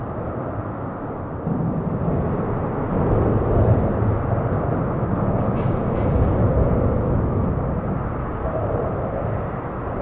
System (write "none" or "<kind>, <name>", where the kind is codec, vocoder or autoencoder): none